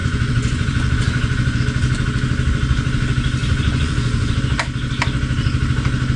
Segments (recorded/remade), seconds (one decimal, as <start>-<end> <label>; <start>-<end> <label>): 0.0-1.6 remade; 1.6-3.4 recorded; 3.4-4.4 remade; 4.4-6.2 recorded